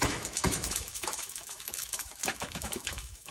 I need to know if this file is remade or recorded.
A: remade